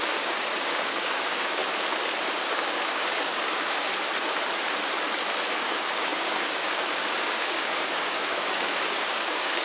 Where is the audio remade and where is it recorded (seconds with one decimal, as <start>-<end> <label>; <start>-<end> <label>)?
0.0-1.6 remade; 1.6-2.4 recorded; 2.4-3.9 remade; 3.9-5.5 recorded; 5.5-9.6 remade

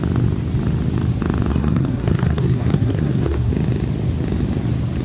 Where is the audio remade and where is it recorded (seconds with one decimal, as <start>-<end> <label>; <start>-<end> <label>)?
0.0-1.5 recorded; 1.5-3.5 remade; 3.5-5.0 recorded

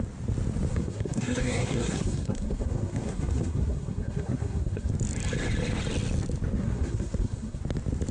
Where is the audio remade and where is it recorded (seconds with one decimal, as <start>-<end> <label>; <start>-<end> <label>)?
0.0-0.7 recorded; 0.7-4.9 remade; 4.9-6.6 recorded; 6.6-7.6 remade; 7.6-8.1 recorded

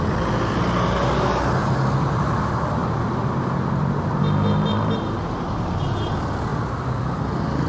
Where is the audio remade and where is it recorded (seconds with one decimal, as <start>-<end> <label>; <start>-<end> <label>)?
0.0-1.6 recorded; 1.6-2.2 remade; 2.2-2.8 recorded; 2.8-4.2 remade; 4.2-7.7 recorded

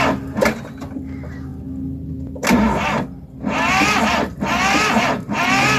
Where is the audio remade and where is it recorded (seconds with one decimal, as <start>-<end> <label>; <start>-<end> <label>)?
0.0-5.8 recorded

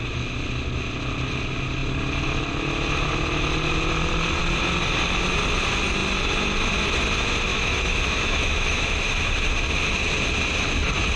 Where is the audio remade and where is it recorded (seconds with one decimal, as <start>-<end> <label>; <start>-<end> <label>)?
0.0-7.5 recorded; 7.5-9.2 remade; 9.2-11.2 recorded

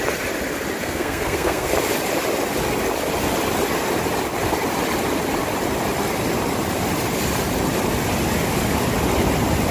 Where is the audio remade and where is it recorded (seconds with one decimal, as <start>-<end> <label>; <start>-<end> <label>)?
0.0-0.8 recorded; 0.8-1.7 remade; 1.7-9.7 recorded